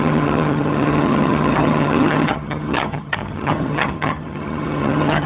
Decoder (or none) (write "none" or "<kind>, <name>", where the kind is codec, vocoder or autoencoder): vocoder, HiFi-GAN